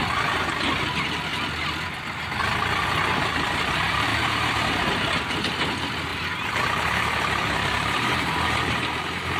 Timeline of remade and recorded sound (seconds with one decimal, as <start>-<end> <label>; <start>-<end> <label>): 0.0-4.1 recorded; 4.1-5.6 remade; 5.6-6.1 recorded; 6.1-9.0 remade; 9.0-9.4 recorded